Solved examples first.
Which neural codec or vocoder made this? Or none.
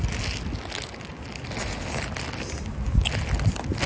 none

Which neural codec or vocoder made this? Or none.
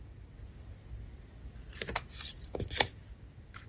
none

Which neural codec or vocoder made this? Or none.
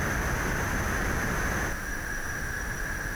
none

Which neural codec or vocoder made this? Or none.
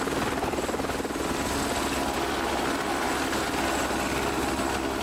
none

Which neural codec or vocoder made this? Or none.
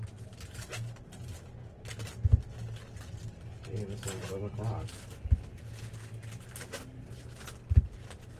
none